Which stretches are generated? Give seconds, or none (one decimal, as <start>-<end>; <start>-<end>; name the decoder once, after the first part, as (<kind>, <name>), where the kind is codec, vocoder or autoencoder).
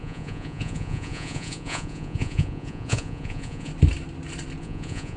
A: 0.0-3.7 (vocoder, Vocos); 4.6-5.2